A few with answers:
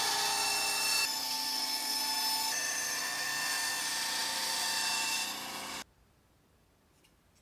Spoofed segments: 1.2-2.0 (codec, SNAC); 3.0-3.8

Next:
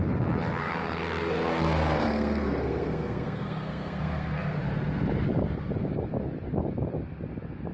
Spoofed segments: 0.6-4.6 (codec, SNAC)

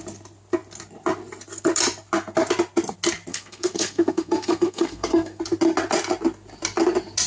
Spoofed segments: 3.3-5.4 (codec, SNAC)

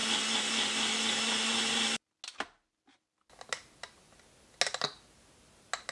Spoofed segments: none